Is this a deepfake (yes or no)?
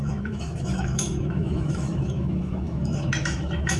yes